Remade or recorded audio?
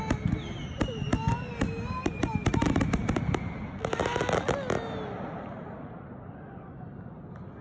recorded